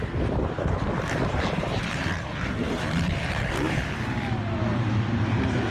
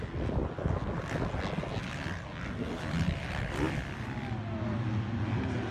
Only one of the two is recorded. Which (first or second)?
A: second